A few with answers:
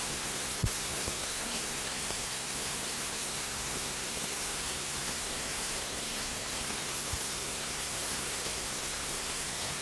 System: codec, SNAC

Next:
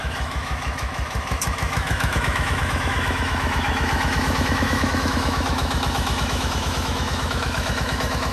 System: autoencoder, DAC-VAE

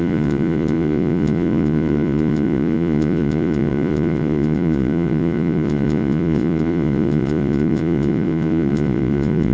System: vocoder, Vocos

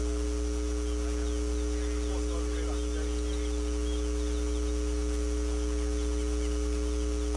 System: none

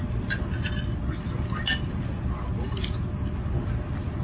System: none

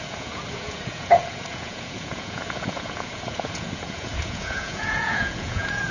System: vocoder, Vocos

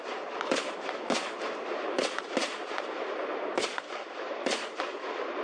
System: vocoder, BigVGAN v2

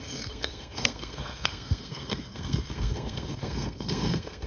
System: codec, SNAC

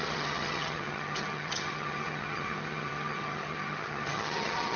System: vocoder, HiFi-GAN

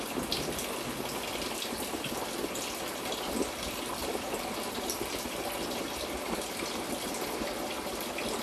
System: none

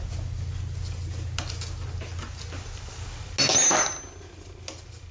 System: none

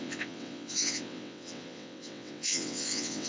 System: vocoder, WaveNeXt